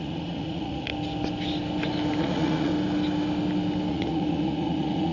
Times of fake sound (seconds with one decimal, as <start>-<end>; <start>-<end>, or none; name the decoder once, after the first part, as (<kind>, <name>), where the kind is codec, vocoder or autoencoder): 0.0-0.9 (vocoder, Vocos); 2.2-2.7; 3.9-5.1